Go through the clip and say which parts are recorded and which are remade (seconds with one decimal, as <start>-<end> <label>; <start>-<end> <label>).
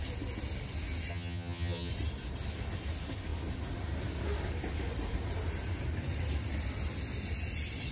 0.0-1.1 recorded; 1.1-1.9 remade; 1.9-7.9 recorded